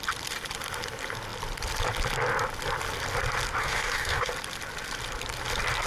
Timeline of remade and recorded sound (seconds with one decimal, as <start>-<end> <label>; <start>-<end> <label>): 0.0-3.6 recorded; 3.6-4.3 remade; 4.3-5.9 recorded